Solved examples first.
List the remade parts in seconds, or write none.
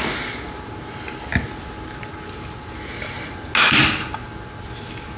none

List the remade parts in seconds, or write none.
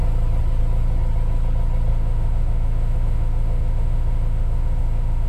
1.9-5.3 (autoencoder, DAC-VAE)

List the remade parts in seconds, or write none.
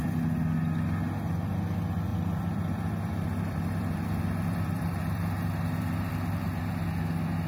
2.1-6.1 (vocoder, BigVGAN v2)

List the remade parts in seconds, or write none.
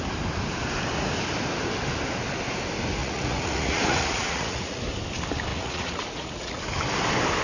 3.0-4.8 (vocoder, Vocos); 5.5-6.6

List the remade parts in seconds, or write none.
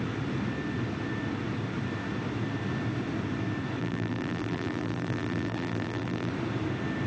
3.8-6.3 (vocoder, BigVGAN v2)